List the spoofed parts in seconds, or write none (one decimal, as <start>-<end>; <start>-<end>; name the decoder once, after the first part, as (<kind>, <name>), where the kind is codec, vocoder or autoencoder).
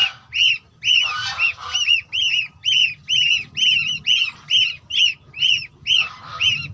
none